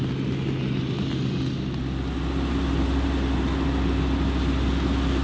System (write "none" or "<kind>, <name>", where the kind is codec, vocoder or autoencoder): none